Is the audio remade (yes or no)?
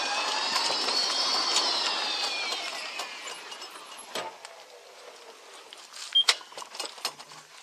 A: no